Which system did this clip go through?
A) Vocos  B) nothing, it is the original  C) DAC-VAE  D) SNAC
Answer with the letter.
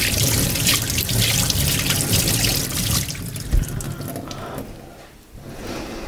B